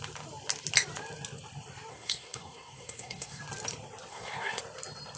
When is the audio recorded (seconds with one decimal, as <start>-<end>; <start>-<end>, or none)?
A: 0.0-1.9; 3.4-4.1; 4.6-5.2